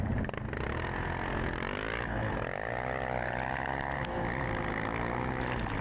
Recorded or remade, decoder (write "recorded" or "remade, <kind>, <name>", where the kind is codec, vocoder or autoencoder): recorded